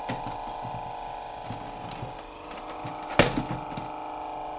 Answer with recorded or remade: recorded